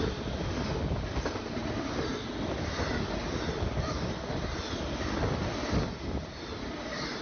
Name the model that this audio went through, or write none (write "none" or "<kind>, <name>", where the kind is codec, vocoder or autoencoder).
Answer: none